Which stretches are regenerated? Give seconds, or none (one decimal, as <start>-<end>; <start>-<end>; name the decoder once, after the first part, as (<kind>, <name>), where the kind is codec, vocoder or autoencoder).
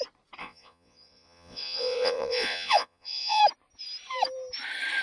0.4-3.4 (vocoder, Vocos)